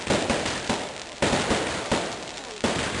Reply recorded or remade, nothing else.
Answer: recorded